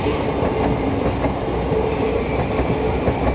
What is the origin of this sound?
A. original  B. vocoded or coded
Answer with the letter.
A